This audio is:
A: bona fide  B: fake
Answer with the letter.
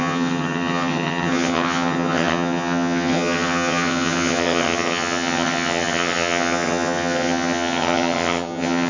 B